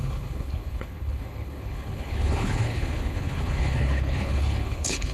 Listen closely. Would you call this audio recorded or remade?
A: remade